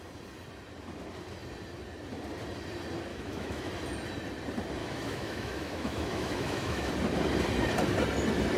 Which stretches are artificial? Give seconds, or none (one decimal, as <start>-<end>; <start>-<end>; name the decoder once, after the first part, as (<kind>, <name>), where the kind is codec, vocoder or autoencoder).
3.1-3.7 (autoencoder, DAC-VAE); 4.8-6.9